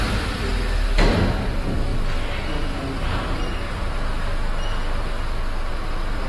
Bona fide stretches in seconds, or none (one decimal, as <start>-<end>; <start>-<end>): 0.0-6.3